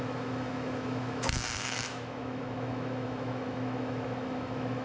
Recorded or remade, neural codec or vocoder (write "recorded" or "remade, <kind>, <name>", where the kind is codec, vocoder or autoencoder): remade, autoencoder, DAC-VAE